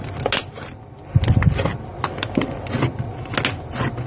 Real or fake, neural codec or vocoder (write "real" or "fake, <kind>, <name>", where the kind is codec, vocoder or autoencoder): real